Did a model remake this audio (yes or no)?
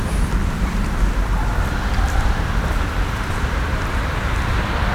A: yes